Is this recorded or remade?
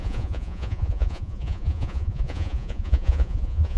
remade